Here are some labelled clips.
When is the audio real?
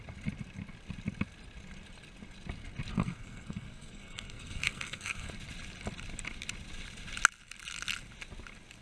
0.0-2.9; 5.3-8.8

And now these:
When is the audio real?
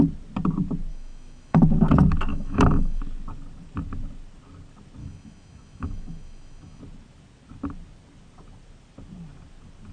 0.0-0.9; 1.6-2.3; 3.0-5.0; 6.8-9.9